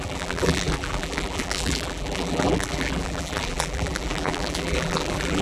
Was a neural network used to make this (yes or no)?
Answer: yes